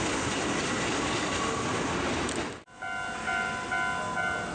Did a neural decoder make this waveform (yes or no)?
no